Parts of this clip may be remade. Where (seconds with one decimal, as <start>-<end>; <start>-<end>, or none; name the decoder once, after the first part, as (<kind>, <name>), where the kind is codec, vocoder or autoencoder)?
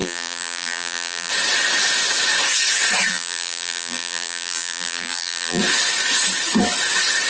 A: 0.0-1.3 (vocoder, BigVGAN v2); 3.1-5.6